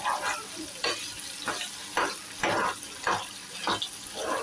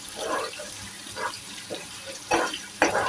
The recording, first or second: first